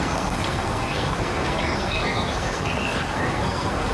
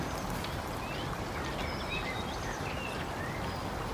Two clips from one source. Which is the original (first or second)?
second